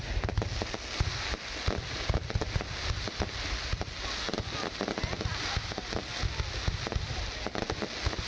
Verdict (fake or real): real